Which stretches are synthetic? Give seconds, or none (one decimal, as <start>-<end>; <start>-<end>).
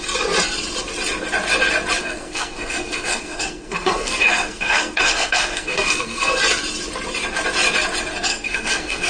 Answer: 2.0-6.4; 8.3-9.1